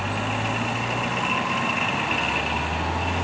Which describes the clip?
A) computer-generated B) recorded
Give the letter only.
B